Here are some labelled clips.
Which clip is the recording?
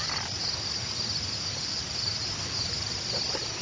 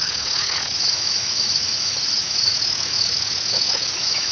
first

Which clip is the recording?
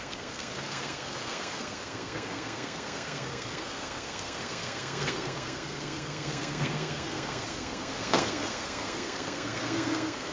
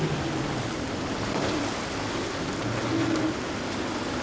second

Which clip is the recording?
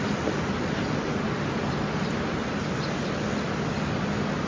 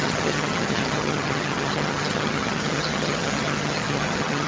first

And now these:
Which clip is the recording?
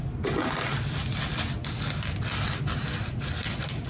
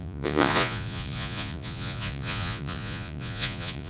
first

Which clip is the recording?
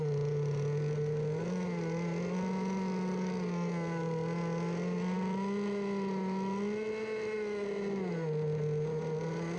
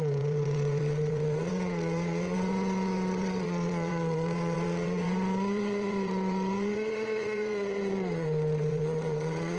first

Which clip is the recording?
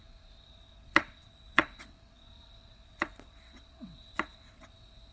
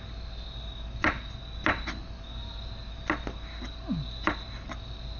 second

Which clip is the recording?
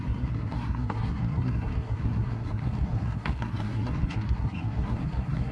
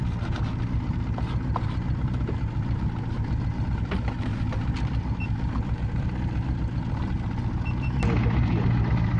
second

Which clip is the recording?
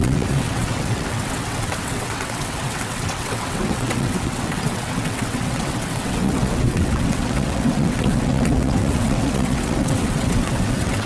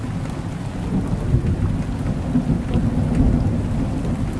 second